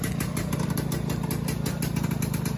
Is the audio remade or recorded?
recorded